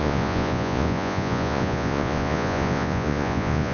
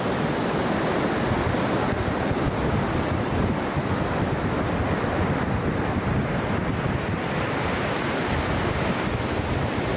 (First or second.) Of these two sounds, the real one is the second